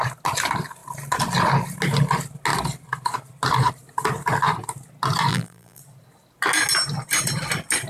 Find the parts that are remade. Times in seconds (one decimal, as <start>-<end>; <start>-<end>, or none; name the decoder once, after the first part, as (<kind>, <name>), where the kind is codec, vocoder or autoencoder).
5.3-5.8 (vocoder, BigVGAN v2)